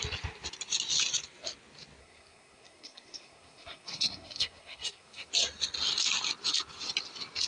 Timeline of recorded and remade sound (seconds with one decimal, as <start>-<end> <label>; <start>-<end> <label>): 0.0-2.0 recorded; 2.0-5.3 remade; 5.3-7.5 recorded